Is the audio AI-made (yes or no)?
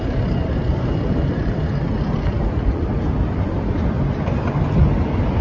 yes